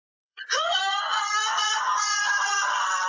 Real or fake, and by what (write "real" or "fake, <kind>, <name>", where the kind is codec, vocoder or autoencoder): fake, vocoder, Vocos